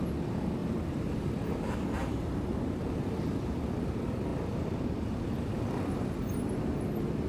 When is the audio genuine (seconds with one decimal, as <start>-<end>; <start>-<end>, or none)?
0.0-0.6; 1.5-2.0; 3.6-7.3